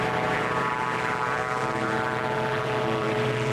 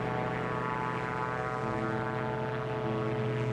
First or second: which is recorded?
second